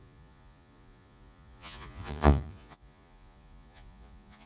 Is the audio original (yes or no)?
no